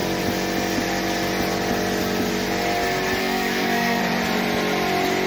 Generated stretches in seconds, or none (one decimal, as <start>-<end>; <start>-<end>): 3.2-4.0